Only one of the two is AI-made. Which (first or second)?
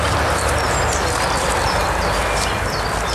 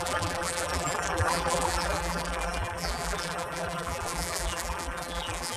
second